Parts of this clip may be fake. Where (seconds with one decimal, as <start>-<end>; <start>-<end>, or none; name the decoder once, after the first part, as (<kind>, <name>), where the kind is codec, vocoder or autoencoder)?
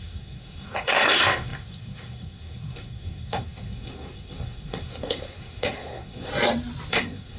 0.0-6.3 (codec, SNAC); 6.9-7.4